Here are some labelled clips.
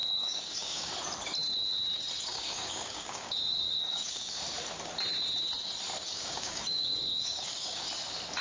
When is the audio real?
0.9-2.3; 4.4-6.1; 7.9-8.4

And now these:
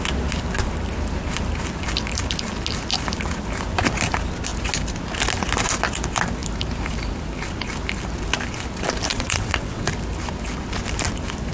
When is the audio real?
0.0-9.1; 9.9-11.5

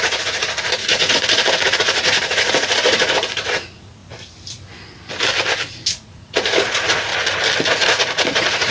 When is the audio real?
4.0-5.9; 7.1-7.7

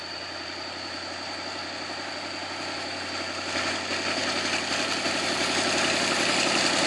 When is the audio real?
0.0-6.9

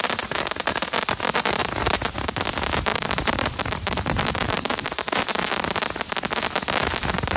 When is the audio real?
0.0-2.9; 5.2-7.4

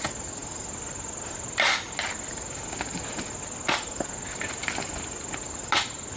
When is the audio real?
0.0-6.2

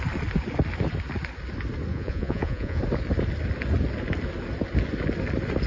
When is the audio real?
0.0-1.9; 2.8-5.7

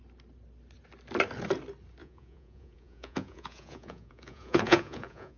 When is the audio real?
0.0-2.0